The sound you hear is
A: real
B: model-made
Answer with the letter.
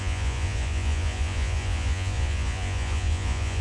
B